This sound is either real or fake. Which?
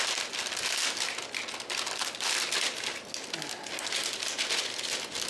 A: real